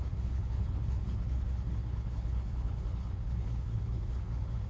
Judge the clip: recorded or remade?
remade